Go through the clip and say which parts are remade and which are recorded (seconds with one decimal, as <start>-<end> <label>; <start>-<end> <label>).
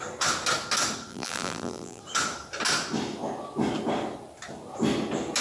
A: 0.0-1.1 recorded; 1.1-2.0 remade; 2.0-5.4 recorded